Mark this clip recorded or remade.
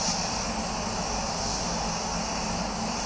recorded